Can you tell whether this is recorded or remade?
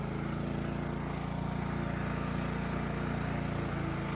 recorded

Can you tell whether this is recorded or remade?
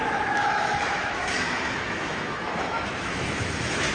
remade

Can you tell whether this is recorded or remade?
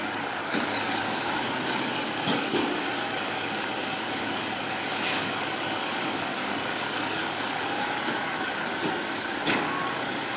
remade